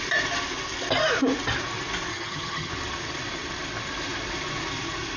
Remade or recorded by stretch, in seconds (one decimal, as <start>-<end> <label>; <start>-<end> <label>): 0.0-2.1 recorded; 2.1-2.7 remade; 2.7-5.2 recorded